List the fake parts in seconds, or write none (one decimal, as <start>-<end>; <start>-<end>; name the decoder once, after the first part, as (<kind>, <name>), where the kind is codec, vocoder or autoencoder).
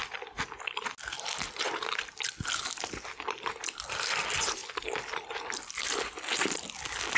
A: none